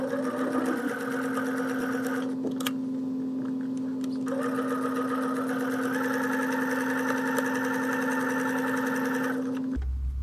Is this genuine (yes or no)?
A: yes